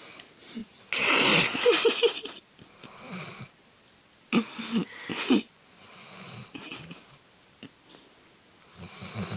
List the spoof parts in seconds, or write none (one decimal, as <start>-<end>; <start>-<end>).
5.1-6.3